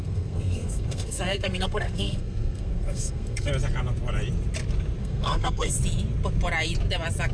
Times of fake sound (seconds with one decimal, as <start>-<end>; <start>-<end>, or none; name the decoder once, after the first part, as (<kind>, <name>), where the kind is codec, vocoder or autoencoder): 0.0-3.5 (codec, SNAC); 5.0-5.7

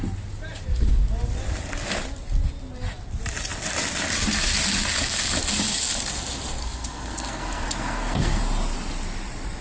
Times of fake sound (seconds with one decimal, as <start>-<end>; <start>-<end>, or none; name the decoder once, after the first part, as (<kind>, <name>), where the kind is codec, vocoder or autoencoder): 6.6-8.4 (codec, SNAC)

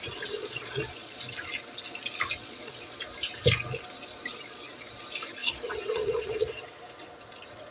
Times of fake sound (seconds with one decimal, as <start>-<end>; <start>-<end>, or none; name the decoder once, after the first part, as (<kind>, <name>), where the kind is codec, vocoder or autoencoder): 0.4-1.2 (vocoder, Vocos); 2.4-3.0; 4.3-4.9; 5.4-6.8